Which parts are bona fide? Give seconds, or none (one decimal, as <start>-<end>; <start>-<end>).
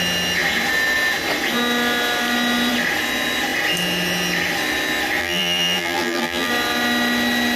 0.0-5.2; 6.5-7.6